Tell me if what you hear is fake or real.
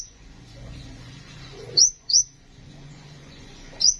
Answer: fake